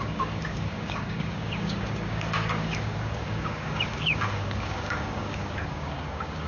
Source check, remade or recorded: remade